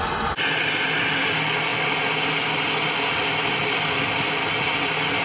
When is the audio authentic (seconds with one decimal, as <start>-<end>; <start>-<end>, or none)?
0.0-5.2